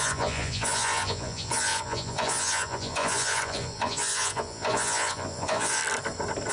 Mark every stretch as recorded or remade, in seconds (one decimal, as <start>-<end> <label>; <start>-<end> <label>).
0.0-5.8 remade; 5.8-6.5 recorded